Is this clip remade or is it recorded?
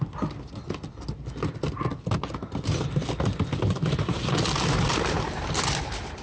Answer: recorded